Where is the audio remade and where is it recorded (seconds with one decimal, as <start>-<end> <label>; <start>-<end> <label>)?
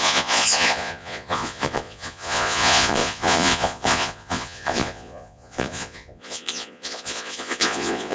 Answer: 0.0-8.1 remade